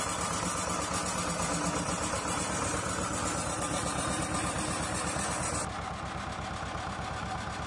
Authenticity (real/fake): real